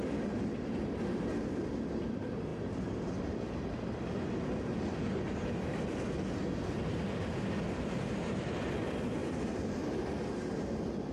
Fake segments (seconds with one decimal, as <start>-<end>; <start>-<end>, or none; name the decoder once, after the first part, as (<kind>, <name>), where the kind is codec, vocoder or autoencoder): 9.2-10.1 (vocoder, BigVGAN v2)